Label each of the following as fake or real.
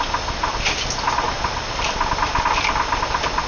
real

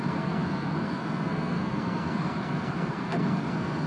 fake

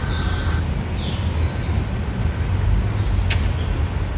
real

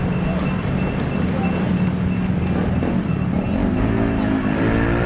real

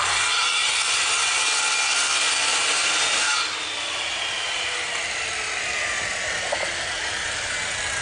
real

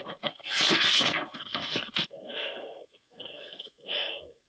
fake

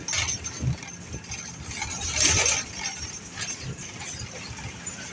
real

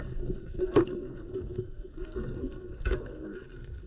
fake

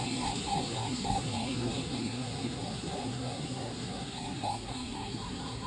fake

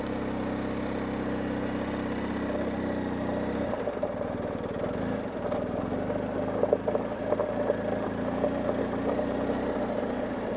real